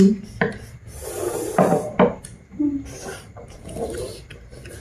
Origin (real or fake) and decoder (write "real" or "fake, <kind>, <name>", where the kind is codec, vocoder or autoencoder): fake, vocoder, BigVGAN v2